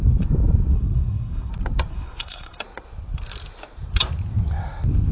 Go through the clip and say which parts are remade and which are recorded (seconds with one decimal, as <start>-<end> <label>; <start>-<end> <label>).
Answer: 0.0-0.7 recorded; 0.7-1.5 remade; 1.5-1.9 recorded; 1.9-2.6 remade; 2.6-5.1 recorded